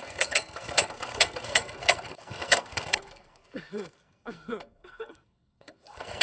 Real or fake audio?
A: fake